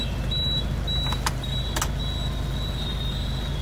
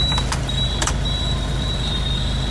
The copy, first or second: second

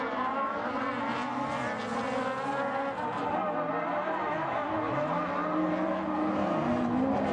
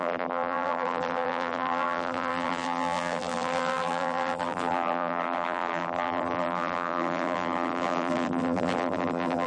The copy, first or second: second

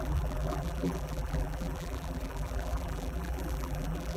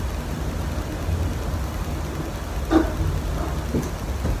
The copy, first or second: first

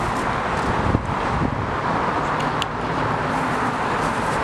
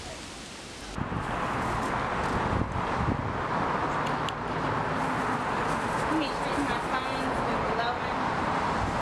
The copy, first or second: first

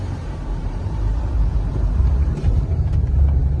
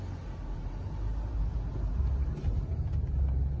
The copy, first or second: first